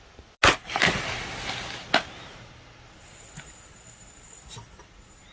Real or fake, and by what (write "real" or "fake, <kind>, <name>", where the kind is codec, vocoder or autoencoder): real